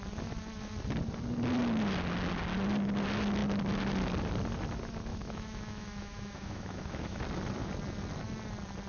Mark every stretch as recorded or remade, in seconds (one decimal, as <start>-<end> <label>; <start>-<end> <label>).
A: 0.0-5.1 recorded; 5.1-7.2 remade; 7.2-8.9 recorded